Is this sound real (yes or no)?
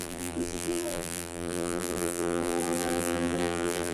no